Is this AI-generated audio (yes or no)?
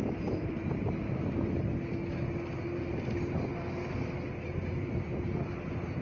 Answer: no